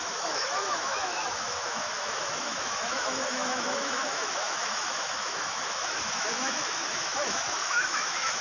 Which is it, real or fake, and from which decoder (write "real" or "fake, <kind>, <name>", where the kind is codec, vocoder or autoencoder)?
fake, autoencoder, DAC-VAE